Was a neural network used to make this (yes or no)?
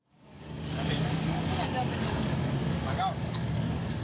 yes